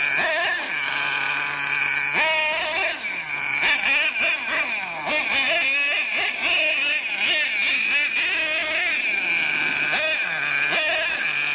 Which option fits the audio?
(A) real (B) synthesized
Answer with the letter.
A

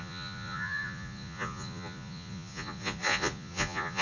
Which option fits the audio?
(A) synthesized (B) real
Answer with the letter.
A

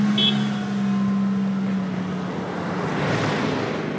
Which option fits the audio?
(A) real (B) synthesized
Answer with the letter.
A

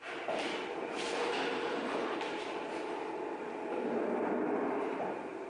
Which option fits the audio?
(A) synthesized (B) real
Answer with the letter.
A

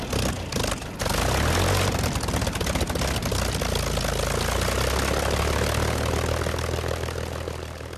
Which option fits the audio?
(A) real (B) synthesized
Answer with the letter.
A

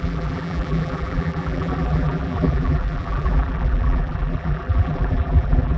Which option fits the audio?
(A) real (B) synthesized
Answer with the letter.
B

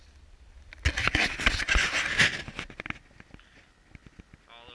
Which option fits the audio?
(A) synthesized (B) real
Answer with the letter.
B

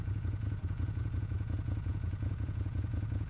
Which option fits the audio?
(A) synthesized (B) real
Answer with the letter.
A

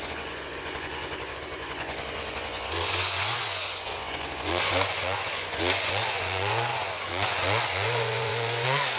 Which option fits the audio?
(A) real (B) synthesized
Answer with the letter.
B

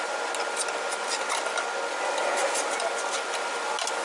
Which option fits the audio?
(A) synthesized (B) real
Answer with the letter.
B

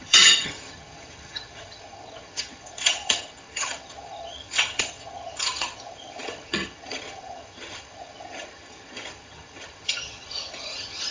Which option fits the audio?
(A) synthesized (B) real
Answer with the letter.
A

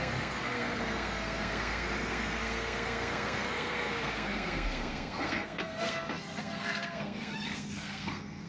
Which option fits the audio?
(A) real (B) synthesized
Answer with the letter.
B